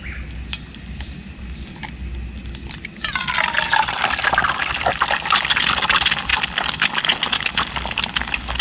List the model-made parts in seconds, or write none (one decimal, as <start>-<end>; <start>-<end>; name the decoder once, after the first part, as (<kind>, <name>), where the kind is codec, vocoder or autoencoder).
none